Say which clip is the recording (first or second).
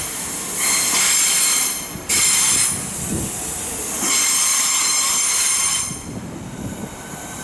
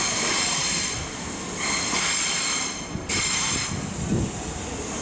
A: first